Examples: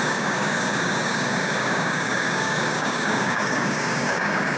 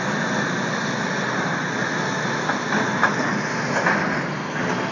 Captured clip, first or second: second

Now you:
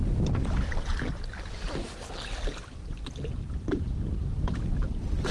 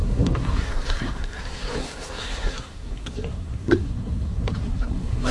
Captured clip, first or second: first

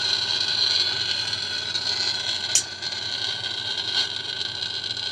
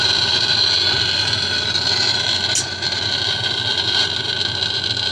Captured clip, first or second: first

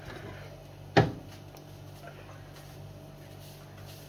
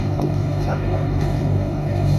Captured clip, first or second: first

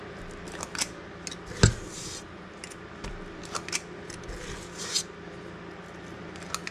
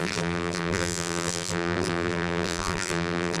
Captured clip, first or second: first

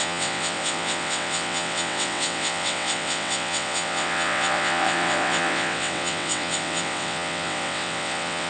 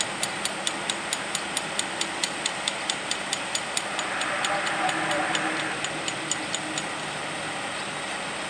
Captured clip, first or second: second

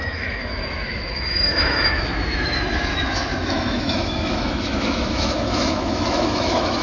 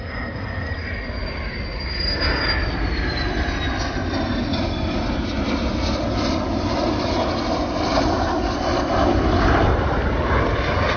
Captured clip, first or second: second